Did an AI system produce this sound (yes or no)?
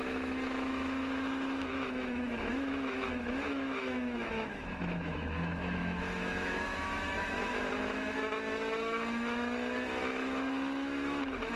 yes